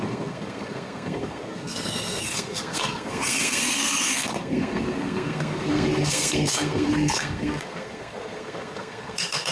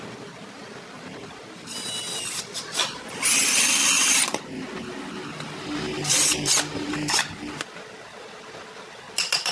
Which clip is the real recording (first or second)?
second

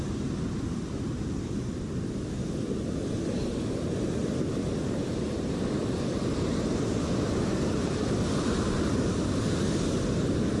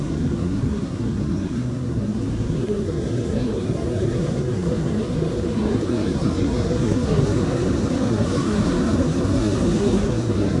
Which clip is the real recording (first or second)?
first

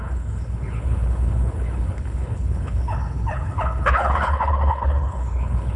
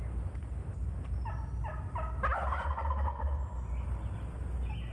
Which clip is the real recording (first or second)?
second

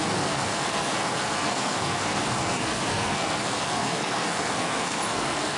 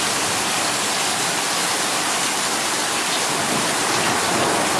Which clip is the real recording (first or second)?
second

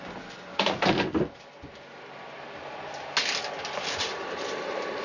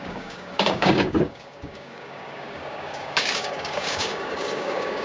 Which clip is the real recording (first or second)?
first